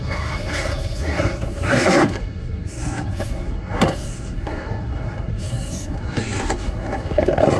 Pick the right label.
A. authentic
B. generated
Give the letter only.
B